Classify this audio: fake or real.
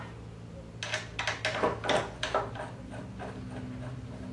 real